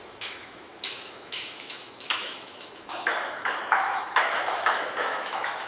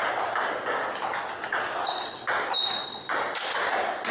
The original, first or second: second